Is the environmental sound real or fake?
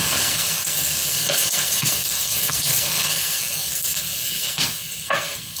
fake